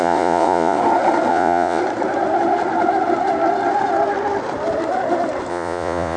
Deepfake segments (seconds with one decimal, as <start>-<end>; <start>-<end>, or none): 0.0-0.8; 1.3-1.8; 5.5-6.2